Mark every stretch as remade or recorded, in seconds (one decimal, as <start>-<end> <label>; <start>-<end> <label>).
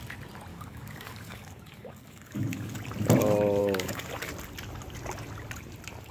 0.0-0.5 recorded; 0.5-2.8 remade; 2.8-3.6 recorded; 3.6-4.1 remade; 4.1-6.1 recorded